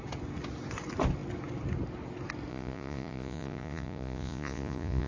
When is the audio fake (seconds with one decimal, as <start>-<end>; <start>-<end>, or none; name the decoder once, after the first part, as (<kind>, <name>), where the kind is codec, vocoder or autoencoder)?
2.5-5.1 (vocoder, Vocos)